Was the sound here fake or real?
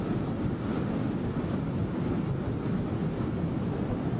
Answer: real